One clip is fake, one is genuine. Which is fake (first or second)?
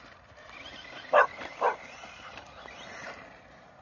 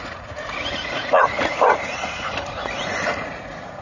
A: second